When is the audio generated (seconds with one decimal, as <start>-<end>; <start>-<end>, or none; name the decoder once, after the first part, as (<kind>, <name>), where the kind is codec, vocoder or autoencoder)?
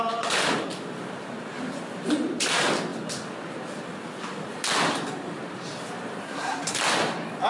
6.2-6.7 (codec, SNAC)